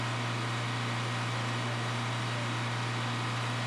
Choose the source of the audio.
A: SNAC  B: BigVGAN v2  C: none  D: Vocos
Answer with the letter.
C